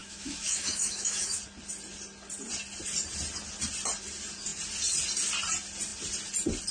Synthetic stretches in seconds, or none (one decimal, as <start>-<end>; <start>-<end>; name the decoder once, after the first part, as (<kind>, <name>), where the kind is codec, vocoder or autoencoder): 0.0-1.4 (autoencoder, DAC-VAE)